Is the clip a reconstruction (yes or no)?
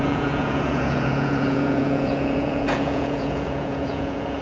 yes